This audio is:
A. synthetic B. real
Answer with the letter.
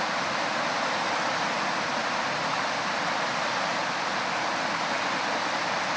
B